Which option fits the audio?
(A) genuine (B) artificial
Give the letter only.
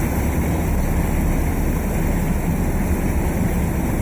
A